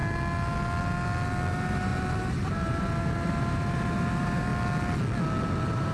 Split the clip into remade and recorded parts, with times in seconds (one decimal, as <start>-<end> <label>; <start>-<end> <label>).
0.0-1.5 recorded; 1.5-4.5 remade; 4.5-5.4 recorded; 5.4-5.9 remade